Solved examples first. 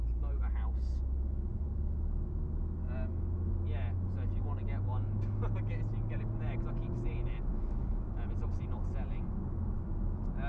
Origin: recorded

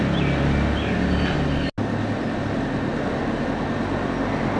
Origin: recorded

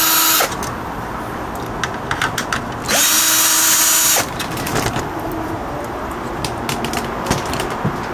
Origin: recorded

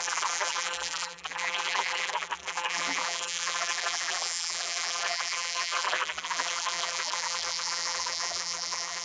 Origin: remade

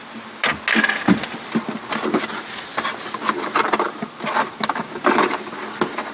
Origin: recorded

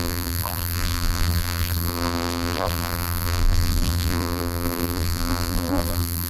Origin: remade